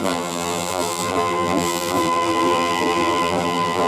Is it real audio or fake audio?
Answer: fake